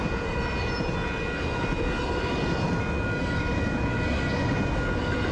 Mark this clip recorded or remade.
recorded